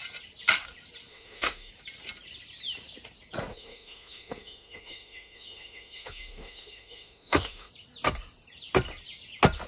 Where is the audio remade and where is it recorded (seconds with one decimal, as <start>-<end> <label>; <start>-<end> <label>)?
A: 0.0-1.1 recorded; 1.1-1.7 remade; 1.7-3.5 recorded; 3.5-7.7 remade; 7.7-9.7 recorded